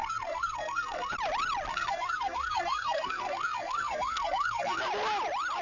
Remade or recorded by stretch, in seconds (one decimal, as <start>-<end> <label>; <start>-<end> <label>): 0.0-1.1 remade; 1.1-1.7 recorded; 1.7-4.8 remade; 4.8-5.6 recorded